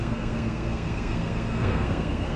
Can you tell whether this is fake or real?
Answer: fake